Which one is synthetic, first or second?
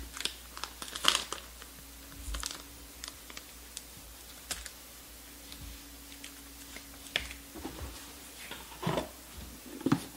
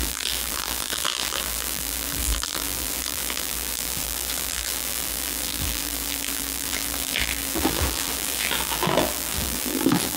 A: second